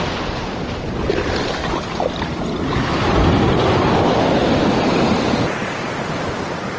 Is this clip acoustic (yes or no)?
yes